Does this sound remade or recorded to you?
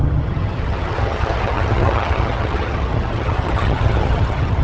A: remade